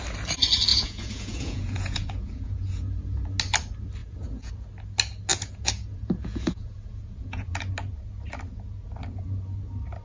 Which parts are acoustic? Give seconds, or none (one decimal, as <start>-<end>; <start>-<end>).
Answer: 0.0-0.7; 3.4-4.0; 4.5-5.3; 7.7-10.0